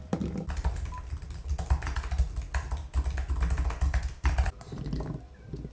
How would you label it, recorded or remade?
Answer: recorded